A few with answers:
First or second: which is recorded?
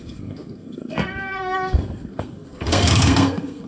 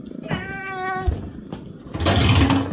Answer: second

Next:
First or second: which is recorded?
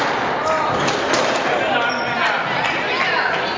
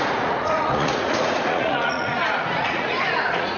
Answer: first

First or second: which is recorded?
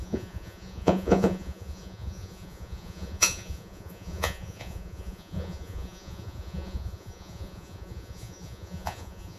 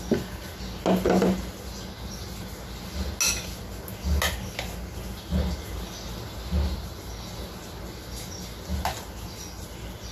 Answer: second